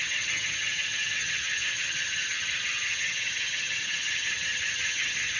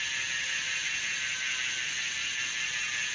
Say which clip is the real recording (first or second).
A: second